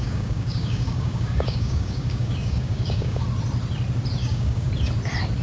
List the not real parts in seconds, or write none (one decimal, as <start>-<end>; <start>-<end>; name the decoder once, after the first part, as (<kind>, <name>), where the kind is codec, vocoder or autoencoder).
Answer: 0.0-3.2 (codec, DAC); 4.2-4.7